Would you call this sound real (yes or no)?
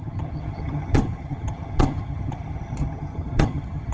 no